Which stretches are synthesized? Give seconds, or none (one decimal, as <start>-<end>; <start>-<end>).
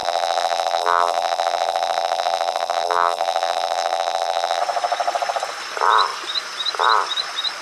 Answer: 0.0-4.6